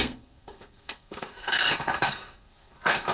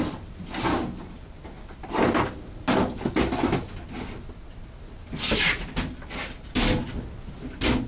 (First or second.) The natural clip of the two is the second